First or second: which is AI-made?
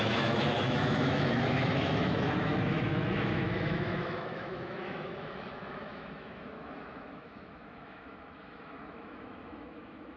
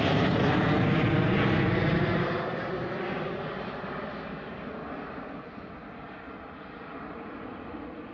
first